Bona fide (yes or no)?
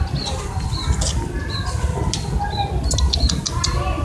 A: yes